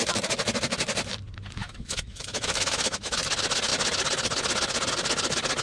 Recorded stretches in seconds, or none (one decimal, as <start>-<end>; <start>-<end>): 0.0-1.6; 3.2-5.6

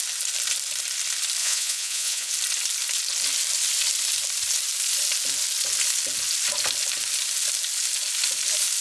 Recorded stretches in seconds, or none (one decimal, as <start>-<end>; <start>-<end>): 0.0-1.4; 2.3-8.8